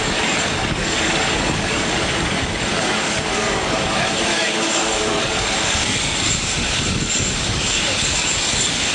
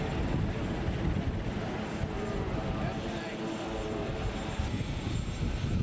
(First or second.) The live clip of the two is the second